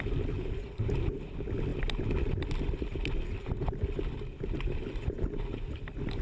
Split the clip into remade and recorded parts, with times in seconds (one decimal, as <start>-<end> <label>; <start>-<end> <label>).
0.0-6.2 recorded